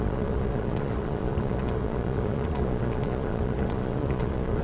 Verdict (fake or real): fake